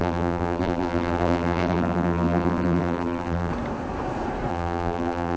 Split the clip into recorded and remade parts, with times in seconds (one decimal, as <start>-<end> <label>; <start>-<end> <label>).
0.0-3.5 remade; 3.5-4.5 recorded; 4.5-5.4 remade